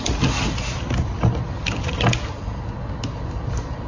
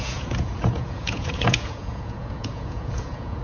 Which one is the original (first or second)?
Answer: first